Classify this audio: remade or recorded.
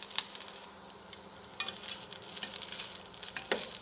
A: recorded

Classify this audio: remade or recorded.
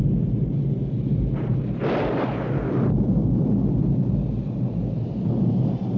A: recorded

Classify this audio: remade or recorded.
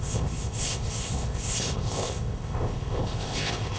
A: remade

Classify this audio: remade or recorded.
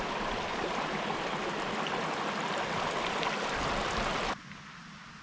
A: recorded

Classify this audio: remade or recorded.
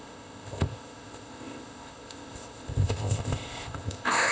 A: remade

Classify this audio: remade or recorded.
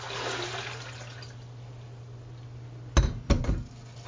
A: recorded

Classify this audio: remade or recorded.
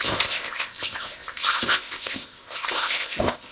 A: remade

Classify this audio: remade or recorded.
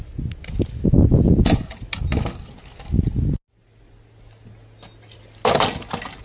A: recorded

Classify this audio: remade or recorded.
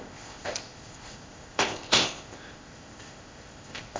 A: remade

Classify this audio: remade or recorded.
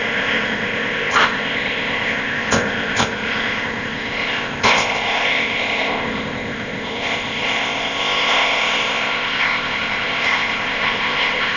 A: remade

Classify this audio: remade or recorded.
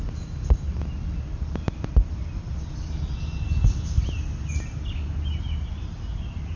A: recorded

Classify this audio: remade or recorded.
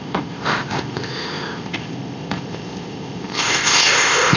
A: remade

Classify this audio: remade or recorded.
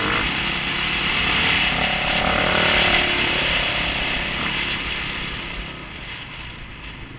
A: recorded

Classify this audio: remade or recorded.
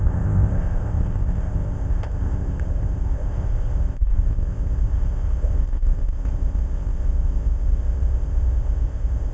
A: remade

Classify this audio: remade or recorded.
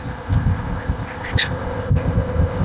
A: remade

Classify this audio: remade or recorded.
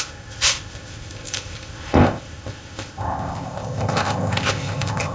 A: remade